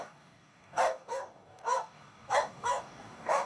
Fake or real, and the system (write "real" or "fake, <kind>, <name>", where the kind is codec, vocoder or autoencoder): fake, codec, DAC